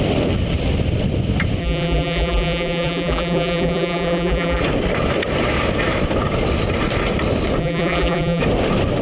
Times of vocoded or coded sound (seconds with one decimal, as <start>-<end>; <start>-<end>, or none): 1.6-4.6; 7.6-8.4